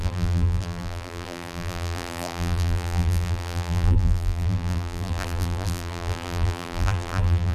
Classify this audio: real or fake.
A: fake